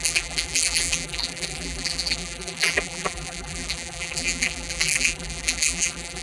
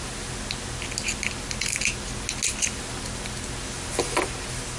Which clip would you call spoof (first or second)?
first